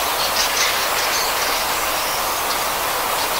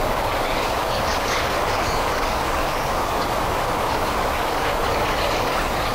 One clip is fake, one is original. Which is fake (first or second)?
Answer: second